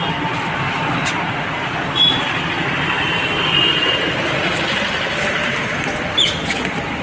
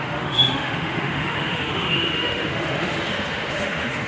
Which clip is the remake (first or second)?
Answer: second